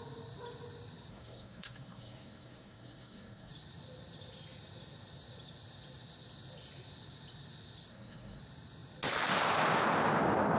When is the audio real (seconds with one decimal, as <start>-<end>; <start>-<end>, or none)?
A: 0.0-1.1; 3.5-7.9; 8.4-10.6